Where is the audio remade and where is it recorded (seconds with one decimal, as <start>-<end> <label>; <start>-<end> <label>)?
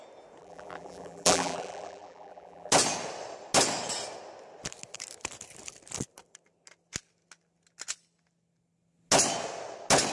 0.0-0.4 recorded; 0.4-2.7 remade; 2.7-10.1 recorded